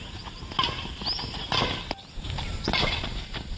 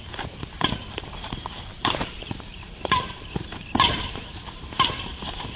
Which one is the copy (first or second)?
second